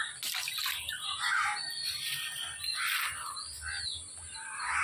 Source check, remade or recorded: recorded